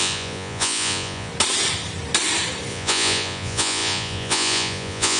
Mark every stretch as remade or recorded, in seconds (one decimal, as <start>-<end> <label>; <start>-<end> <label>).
0.0-1.3 remade; 1.3-2.7 recorded; 2.7-5.2 remade